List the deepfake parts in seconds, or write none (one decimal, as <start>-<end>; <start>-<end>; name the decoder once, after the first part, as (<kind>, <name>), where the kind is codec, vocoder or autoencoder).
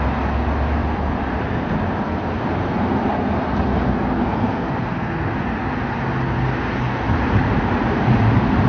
0.8-3.1 (vocoder, BigVGAN v2); 4.3-5.6